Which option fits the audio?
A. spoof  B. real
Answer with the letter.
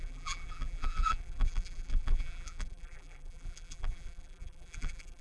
A